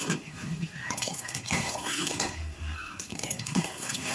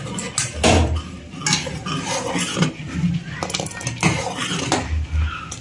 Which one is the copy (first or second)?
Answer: first